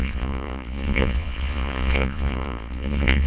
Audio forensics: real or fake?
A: fake